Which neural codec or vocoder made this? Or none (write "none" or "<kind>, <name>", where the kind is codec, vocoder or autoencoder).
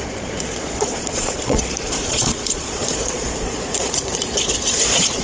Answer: vocoder, Vocos